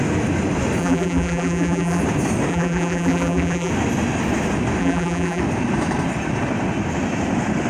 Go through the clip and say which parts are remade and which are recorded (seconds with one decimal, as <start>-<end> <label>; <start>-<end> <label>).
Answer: 0.0-0.8 recorded; 0.8-2.0 remade; 2.0-2.5 recorded; 2.5-3.7 remade; 3.7-4.8 recorded; 4.8-5.4 remade; 5.4-7.7 recorded